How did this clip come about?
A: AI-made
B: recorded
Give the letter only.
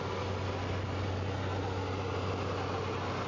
B